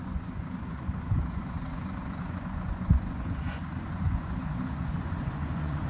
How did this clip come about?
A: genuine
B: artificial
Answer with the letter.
B